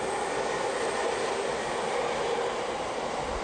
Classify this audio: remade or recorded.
recorded